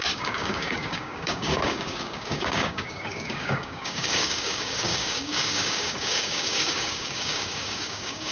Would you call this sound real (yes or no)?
no